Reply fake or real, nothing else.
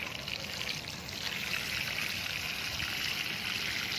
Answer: real